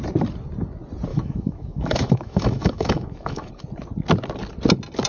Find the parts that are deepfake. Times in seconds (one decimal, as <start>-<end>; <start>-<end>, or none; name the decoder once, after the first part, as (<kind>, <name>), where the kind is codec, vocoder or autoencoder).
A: 1.1-3.5 (autoencoder, DAC-VAE)